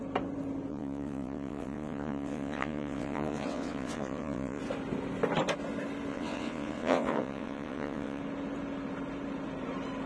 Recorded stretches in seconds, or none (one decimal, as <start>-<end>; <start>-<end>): 0.0-0.7; 4.6-6.1; 8.2-10.1